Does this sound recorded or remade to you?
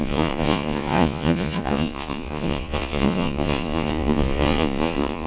remade